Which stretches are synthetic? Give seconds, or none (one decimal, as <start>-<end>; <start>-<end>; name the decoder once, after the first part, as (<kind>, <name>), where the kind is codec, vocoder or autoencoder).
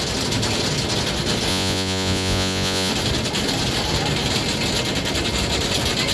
1.5-2.9 (vocoder, Vocos)